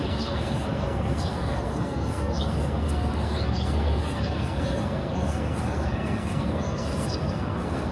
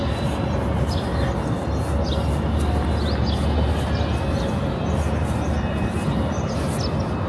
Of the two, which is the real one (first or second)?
second